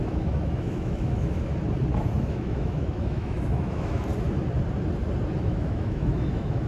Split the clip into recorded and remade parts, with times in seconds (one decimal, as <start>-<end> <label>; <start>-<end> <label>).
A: 0.0-1.5 remade; 1.5-2.2 recorded; 2.2-4.1 remade; 4.1-5.4 recorded; 5.4-6.7 remade